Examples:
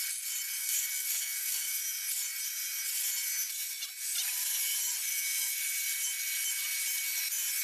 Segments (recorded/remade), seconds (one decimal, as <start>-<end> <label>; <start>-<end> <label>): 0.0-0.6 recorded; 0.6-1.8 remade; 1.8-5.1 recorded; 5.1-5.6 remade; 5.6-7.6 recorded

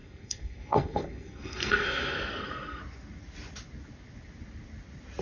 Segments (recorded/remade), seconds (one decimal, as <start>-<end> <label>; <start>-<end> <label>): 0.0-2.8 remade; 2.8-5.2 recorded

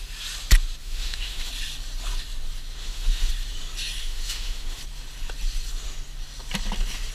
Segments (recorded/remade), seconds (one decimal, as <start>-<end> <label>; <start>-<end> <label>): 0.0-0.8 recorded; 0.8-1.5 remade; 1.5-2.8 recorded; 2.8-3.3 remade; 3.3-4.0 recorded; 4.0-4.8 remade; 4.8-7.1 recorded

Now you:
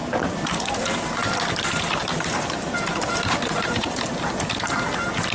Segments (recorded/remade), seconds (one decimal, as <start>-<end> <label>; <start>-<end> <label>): 0.0-2.0 recorded; 2.0-4.1 remade; 4.1-5.3 recorded